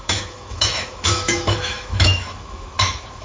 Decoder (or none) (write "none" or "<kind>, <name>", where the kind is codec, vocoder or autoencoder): autoencoder, DAC-VAE